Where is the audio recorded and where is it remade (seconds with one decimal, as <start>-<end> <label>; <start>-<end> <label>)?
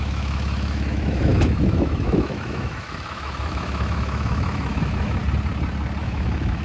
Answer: 0.0-5.2 remade; 5.2-6.0 recorded; 6.0-6.6 remade